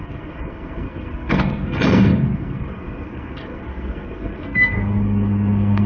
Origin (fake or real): fake